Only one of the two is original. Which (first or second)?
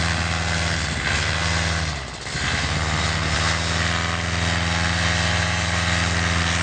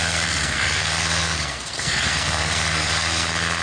first